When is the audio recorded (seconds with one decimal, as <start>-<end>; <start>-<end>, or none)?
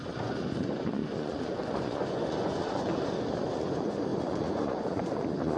none